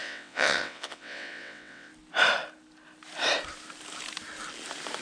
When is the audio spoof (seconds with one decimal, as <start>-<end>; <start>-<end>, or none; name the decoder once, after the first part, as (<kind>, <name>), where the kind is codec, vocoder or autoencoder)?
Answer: 0.0-1.9 (vocoder, WaveNeXt)